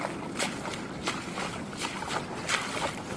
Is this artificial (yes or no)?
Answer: no